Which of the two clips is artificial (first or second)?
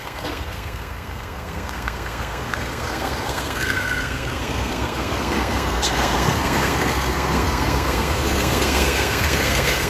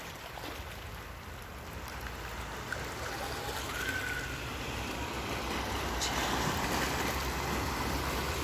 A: first